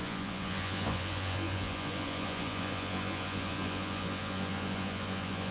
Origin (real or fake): fake